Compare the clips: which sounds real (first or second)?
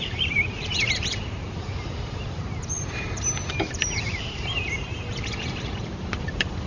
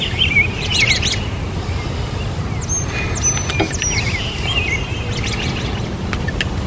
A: second